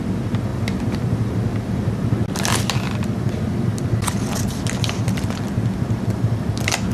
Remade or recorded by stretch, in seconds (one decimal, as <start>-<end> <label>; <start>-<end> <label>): 0.0-6.9 recorded